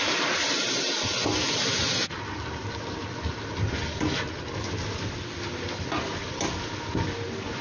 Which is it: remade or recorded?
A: recorded